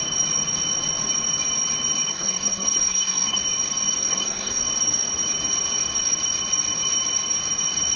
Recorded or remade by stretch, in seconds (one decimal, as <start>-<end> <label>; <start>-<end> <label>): 0.0-2.1 recorded; 2.1-3.4 remade; 3.4-4.0 recorded; 4.0-4.6 remade; 4.6-8.0 recorded

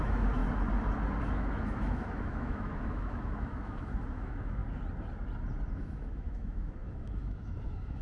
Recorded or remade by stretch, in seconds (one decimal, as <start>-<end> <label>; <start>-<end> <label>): 0.0-0.4 remade; 0.4-1.2 recorded; 1.2-4.6 remade; 4.6-5.7 recorded; 5.7-8.0 remade

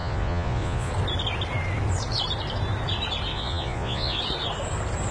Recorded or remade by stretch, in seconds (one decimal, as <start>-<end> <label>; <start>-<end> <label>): 0.0-0.9 remade; 0.9-3.3 recorded; 3.3-4.2 remade; 4.2-5.1 recorded

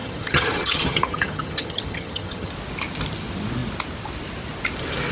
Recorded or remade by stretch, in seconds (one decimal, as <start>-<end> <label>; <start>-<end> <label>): 0.0-2.5 remade; 2.5-5.1 recorded

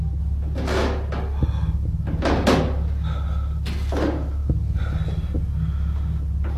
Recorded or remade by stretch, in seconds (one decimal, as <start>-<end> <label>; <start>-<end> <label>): 0.0-6.6 recorded

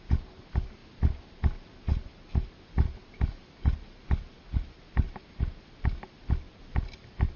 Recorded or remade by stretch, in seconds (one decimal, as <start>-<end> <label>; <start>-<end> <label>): 0.0-7.4 recorded

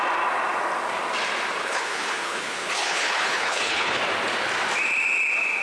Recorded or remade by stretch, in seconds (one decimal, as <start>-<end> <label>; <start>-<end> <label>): 0.0-1.6 recorded; 1.6-4.0 remade; 4.0-5.6 recorded